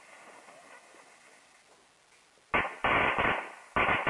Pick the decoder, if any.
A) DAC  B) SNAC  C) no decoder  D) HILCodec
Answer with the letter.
C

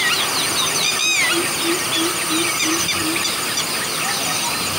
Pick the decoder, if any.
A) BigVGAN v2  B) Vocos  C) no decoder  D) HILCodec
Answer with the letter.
C